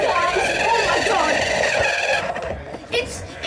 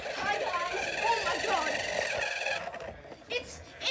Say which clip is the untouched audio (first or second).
second